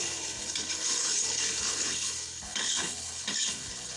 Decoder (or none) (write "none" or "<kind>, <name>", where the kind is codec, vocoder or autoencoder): codec, HILCodec